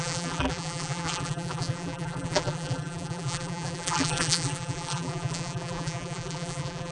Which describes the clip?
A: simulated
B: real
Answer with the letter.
A